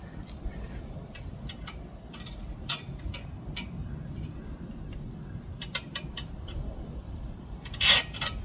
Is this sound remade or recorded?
remade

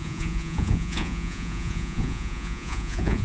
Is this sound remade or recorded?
remade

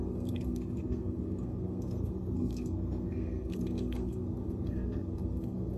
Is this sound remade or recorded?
remade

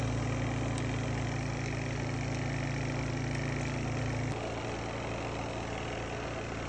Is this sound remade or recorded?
recorded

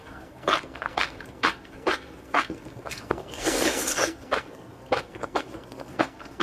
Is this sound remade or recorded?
remade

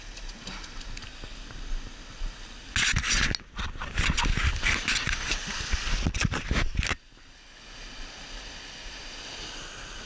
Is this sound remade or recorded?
recorded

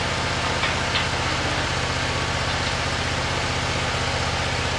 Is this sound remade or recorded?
recorded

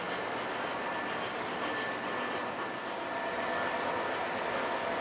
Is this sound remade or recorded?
recorded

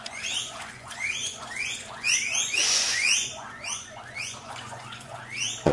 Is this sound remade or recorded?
remade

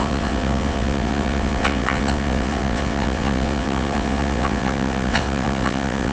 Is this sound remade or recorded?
remade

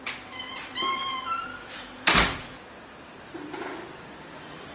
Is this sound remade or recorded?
remade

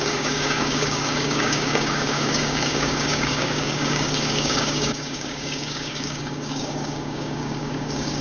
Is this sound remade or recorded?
remade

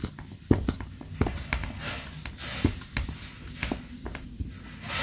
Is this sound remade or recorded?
recorded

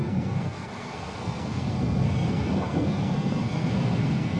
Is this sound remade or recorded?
remade